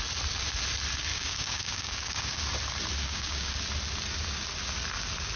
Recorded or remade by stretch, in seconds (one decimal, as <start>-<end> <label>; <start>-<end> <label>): 0.0-1.1 recorded; 1.1-2.4 remade; 2.4-3.0 recorded; 3.0-3.5 remade; 3.5-5.4 recorded